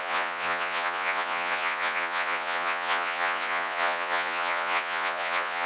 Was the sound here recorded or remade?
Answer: remade